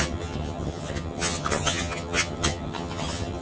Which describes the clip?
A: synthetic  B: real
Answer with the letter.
A